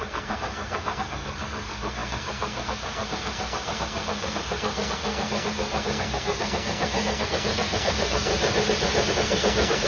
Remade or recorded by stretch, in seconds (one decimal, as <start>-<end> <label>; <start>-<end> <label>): 0.0-8.3 remade; 8.3-9.1 recorded; 9.1-9.9 remade